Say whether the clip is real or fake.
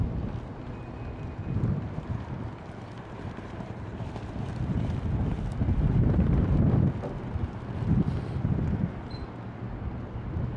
real